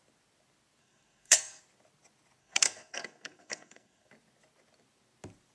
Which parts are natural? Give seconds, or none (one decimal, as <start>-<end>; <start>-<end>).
0.0-0.8; 1.6-2.4; 4.1-5.5